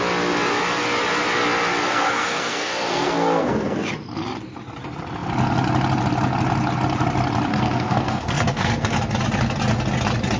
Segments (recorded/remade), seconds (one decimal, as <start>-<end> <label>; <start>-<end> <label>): 0.0-1.8 recorded; 1.8-3.9 remade; 3.9-7.5 recorded; 7.5-9.0 remade; 9.0-10.4 recorded